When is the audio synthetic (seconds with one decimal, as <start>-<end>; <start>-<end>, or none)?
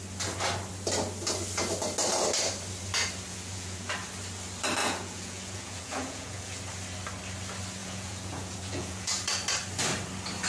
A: 3.3-3.9; 4.8-6.6; 7.8-9.1